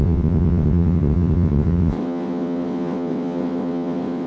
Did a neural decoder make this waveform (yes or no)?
yes